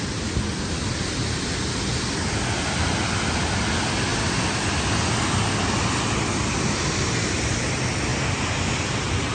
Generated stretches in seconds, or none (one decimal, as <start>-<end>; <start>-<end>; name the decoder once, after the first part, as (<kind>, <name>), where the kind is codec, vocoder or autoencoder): none